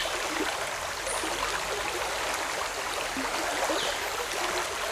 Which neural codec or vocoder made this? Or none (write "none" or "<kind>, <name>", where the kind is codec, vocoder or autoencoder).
none